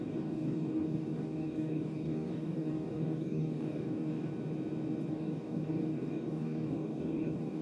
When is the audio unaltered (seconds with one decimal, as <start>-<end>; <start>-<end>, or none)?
4.3-5.1